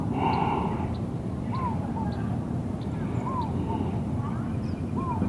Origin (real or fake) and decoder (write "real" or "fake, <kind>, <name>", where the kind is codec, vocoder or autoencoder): real